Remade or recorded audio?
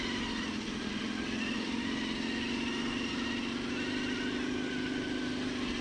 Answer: recorded